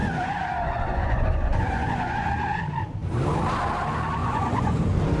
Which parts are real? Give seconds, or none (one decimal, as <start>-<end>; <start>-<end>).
2.3-4.2; 4.8-5.2